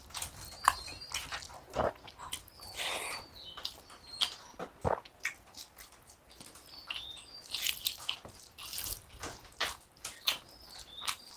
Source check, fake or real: real